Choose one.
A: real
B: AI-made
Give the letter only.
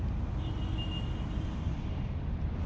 A